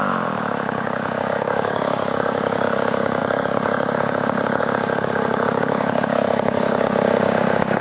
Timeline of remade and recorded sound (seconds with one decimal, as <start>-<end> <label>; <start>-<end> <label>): 0.0-7.8 remade